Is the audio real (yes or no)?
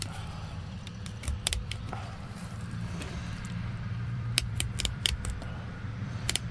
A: no